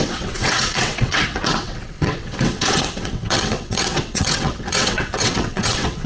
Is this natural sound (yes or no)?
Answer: no